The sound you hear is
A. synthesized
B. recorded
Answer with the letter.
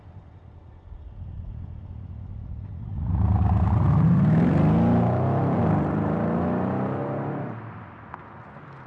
B